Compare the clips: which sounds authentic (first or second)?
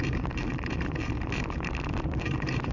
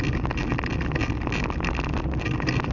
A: second